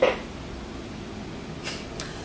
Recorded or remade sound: recorded